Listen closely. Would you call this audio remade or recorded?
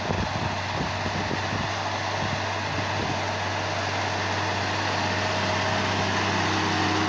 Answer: recorded